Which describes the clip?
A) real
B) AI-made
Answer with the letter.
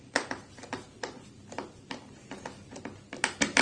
A